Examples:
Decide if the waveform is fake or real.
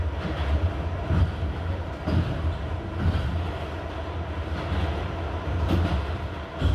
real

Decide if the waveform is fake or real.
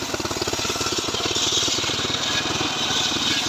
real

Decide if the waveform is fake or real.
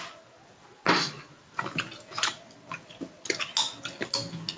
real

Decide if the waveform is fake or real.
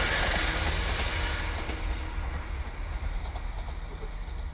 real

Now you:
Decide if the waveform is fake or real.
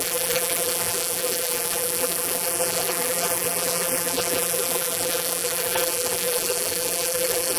fake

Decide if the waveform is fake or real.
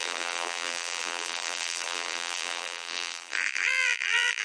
fake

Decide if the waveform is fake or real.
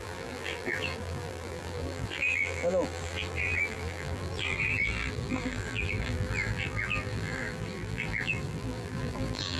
fake